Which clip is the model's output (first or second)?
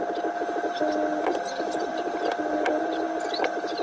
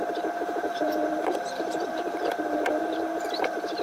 second